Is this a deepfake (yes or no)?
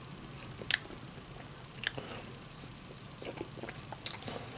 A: no